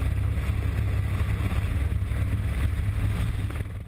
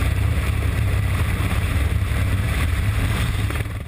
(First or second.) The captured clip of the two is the first